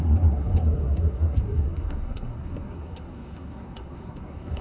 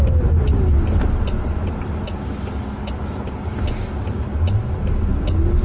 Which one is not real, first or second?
first